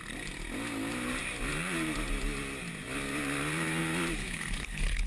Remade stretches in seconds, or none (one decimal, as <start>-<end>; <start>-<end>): 4.2-5.1